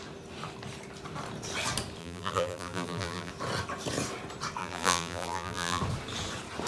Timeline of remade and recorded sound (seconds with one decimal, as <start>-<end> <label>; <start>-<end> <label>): 0.0-2.0 recorded; 2.0-3.3 remade; 3.3-4.6 recorded; 4.6-5.8 remade; 5.8-6.7 recorded